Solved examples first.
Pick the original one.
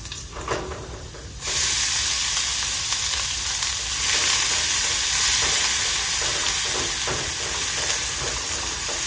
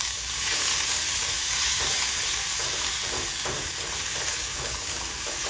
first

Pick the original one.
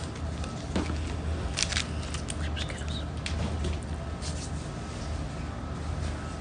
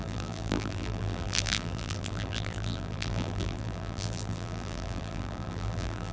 first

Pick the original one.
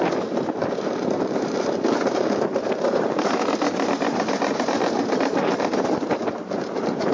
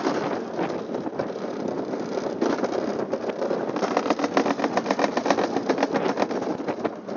second